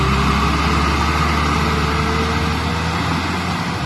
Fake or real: real